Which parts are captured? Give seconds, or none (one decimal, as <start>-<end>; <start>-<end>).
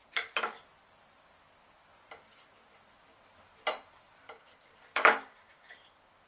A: 0.0-2.9